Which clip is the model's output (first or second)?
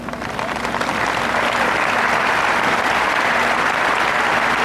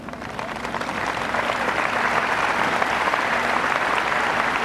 second